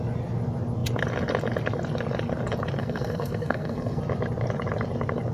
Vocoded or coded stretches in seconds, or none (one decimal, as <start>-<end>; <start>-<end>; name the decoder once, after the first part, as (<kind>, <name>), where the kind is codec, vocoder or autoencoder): 2.8-4.0 (codec, SNAC)

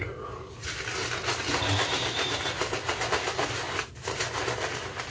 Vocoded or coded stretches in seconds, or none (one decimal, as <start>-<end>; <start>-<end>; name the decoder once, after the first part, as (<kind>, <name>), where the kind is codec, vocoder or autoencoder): none

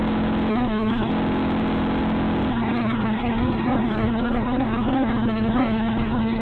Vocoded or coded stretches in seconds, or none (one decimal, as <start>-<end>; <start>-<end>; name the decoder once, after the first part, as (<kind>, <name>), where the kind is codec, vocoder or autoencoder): 0.5-1.1 (codec, SNAC); 2.5-6.4

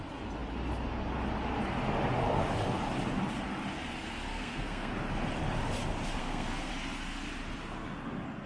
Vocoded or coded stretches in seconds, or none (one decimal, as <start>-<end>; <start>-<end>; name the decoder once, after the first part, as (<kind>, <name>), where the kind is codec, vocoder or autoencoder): 4.3-4.9 (codec, SNAC); 6.2-6.7